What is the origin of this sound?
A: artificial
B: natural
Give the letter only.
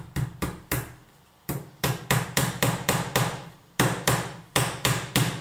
A